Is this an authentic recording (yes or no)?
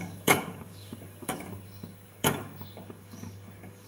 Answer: no